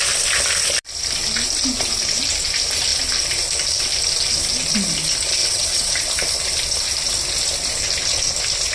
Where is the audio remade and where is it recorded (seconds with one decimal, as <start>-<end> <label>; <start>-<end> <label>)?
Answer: 0.0-5.4 recorded; 5.4-5.9 remade; 5.9-8.7 recorded

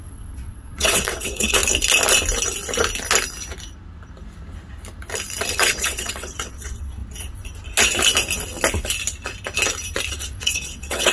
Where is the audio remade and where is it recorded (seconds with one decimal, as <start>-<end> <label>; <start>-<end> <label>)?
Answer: 0.0-1.6 remade; 1.6-5.5 recorded; 5.5-7.0 remade; 7.0-10.1 recorded; 10.1-11.1 remade

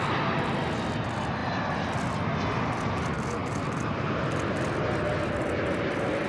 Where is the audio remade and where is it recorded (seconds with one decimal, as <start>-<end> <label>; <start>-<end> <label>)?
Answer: 0.0-6.3 recorded

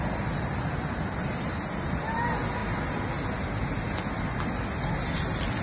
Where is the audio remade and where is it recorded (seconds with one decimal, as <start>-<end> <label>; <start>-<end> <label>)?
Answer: 0.0-5.6 recorded

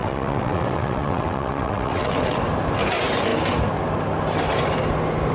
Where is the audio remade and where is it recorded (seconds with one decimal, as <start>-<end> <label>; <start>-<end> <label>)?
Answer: 0.0-2.4 remade; 2.4-5.3 recorded

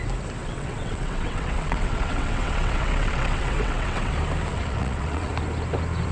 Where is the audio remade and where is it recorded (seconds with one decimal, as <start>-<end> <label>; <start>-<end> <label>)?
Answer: 0.0-0.4 recorded; 0.4-4.1 remade; 4.1-4.5 recorded; 4.5-5.3 remade; 5.3-6.1 recorded

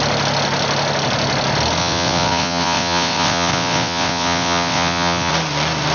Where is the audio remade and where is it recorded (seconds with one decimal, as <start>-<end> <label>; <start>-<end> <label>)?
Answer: 0.0-1.8 recorded; 1.8-5.3 remade; 5.3-5.9 recorded